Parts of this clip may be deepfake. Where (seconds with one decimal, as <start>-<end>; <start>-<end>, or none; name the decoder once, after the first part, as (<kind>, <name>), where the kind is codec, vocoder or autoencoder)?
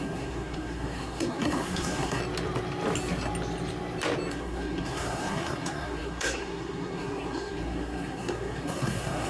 0.0-2.2 (codec, SNAC); 4.3-9.3